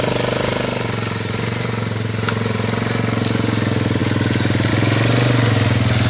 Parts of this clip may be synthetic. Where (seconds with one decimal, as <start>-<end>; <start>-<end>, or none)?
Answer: none